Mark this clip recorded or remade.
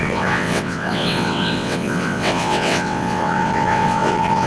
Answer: remade